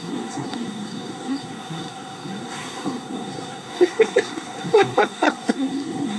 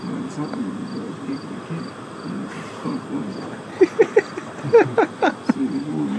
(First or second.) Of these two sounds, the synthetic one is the first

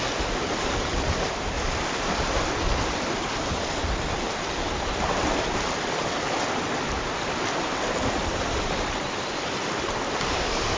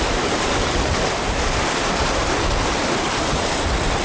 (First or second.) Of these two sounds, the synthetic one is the first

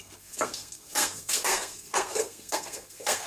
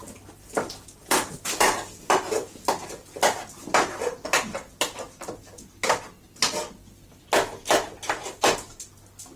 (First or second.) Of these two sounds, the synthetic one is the first